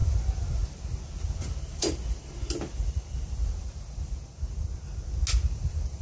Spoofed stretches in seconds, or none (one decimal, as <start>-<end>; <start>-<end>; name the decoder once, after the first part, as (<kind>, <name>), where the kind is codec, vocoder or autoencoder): none